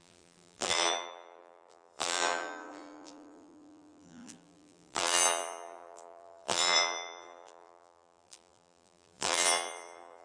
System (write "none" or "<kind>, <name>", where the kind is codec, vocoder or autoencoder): vocoder, BigVGAN v2